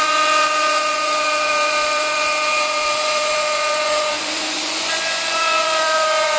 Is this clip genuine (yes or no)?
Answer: no